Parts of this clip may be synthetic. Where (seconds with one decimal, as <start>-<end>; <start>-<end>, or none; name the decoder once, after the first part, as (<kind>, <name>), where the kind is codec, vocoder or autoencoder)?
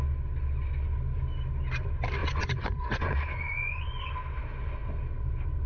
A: 2.2-4.1 (vocoder, Vocos)